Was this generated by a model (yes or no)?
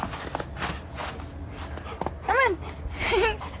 no